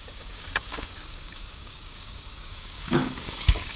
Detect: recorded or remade remade